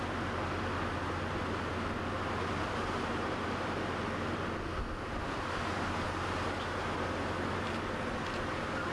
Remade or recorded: recorded